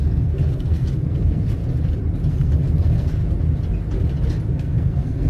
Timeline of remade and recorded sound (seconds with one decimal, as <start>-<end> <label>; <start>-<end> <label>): 0.0-1.6 remade; 1.6-2.3 recorded; 2.3-3.2 remade; 3.2-4.5 recorded; 4.5-5.3 remade